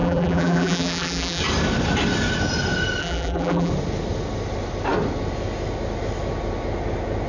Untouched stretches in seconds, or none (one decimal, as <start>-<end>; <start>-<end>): 1.4-3.0; 3.7-7.3